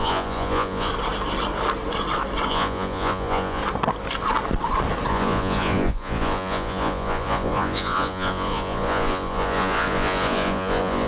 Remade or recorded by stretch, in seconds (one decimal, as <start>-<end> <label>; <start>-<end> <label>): 0.0-0.9 remade; 0.9-2.5 recorded; 2.5-3.6 remade; 3.6-5.1 recorded; 5.1-11.1 remade

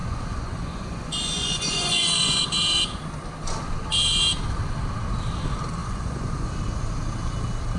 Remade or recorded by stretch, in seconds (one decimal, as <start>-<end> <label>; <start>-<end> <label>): 0.0-2.4 remade; 2.4-5.8 recorded; 5.8-6.5 remade; 6.5-7.8 recorded

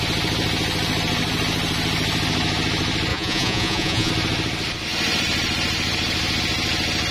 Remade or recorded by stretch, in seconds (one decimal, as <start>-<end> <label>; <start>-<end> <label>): 0.0-3.1 recorded; 3.1-4.1 remade; 4.1-7.1 recorded

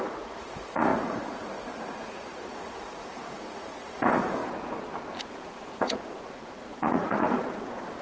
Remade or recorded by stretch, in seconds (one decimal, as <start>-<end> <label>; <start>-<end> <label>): 0.0-4.4 remade; 4.4-5.2 recorded; 5.2-8.0 remade